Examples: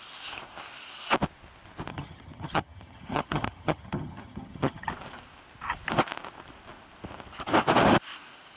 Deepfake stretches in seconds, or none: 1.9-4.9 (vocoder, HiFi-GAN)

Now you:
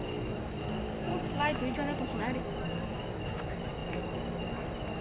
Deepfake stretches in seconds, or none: none

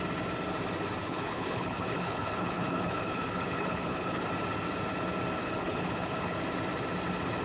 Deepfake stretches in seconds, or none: 1.0-4.3 (codec, HILCodec); 5.4-6.4

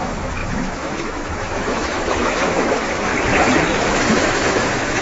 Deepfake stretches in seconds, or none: 0.0-3.1 (autoencoder, DAC-VAE); 3.8-5.0

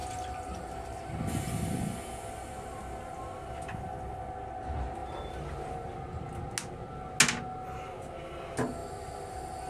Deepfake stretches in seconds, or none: none

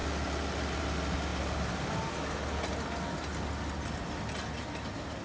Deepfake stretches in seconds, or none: none

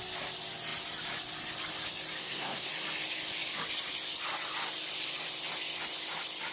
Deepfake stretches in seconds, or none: 2.2-2.7 (codec, SNAC)

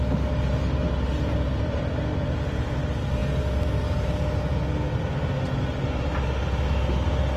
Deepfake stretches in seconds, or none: none